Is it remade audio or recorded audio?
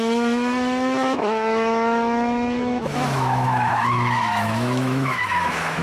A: remade